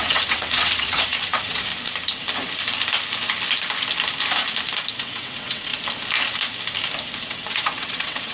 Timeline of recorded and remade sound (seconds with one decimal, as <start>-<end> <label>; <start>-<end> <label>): 0.0-1.7 remade; 1.7-4.9 recorded; 4.9-5.7 remade; 5.7-7.3 recorded; 7.3-8.3 remade